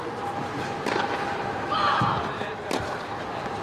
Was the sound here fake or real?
real